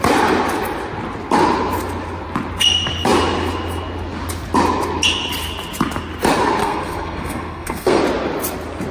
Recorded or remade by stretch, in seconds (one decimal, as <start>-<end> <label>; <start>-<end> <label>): 0.0-6.6 recorded; 6.6-8.0 remade; 8.0-8.9 recorded